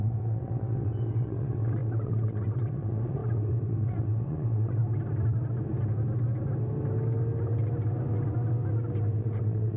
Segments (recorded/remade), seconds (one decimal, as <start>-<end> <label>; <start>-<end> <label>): 0.0-4.8 remade; 4.8-9.2 recorded; 9.2-9.8 remade